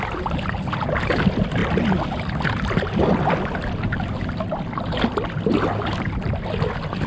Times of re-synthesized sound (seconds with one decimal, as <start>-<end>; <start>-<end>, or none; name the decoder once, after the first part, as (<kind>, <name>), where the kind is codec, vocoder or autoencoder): none